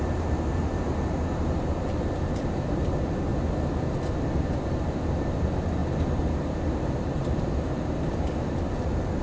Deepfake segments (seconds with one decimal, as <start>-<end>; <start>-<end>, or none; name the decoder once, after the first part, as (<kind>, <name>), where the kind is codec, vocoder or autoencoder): 0.0-3.3 (vocoder, BigVGAN v2); 4.1-5.8; 6.3-9.2